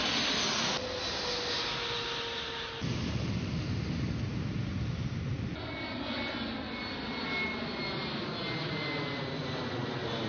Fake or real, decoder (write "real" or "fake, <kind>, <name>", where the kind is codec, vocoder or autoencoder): real